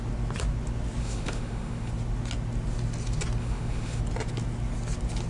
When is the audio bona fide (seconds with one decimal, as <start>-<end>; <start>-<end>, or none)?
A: 0.0-1.0; 1.9-3.4; 4.0-5.3